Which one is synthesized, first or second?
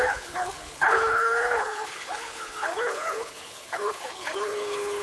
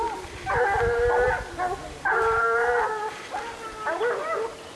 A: first